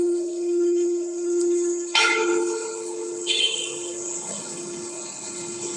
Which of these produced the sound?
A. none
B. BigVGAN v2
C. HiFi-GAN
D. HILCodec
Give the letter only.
D